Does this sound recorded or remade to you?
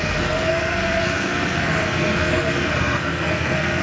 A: remade